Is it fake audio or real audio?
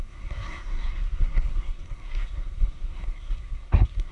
fake